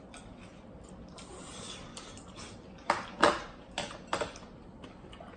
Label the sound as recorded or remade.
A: recorded